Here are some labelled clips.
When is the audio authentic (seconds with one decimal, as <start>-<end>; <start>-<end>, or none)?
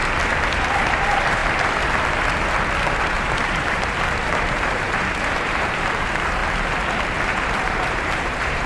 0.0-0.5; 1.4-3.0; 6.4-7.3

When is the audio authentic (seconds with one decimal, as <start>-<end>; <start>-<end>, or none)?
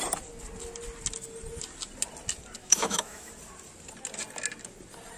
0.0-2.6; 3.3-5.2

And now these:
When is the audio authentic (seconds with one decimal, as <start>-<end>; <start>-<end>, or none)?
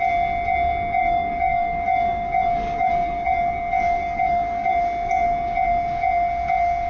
0.0-1.0; 4.7-6.9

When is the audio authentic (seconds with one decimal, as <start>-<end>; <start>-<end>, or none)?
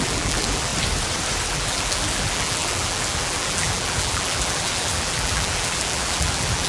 0.7-1.5